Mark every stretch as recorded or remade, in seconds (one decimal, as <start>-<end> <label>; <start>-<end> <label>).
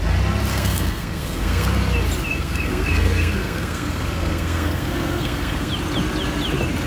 0.0-0.5 recorded; 0.5-1.7 remade; 1.7-2.3 recorded; 2.3-5.7 remade; 5.7-6.9 recorded